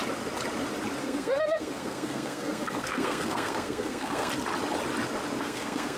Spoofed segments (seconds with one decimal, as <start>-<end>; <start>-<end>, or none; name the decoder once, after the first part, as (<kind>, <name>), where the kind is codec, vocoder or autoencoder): 1.0-4.3 (codec, SNAC); 5.4-6.0